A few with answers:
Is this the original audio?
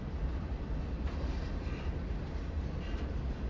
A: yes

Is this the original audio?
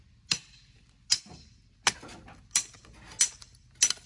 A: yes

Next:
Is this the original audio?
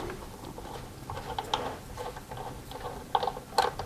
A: yes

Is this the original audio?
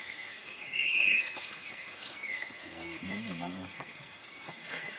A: no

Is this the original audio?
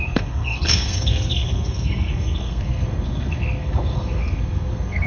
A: no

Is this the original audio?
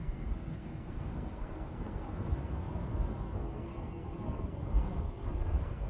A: no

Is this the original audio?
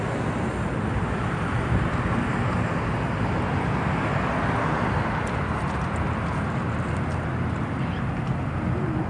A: yes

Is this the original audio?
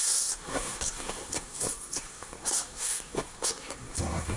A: no